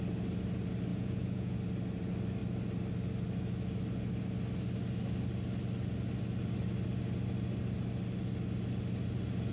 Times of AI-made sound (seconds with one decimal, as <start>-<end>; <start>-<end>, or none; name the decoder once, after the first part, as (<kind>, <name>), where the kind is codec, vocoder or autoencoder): 0.9-1.6 (vocoder, Vocos)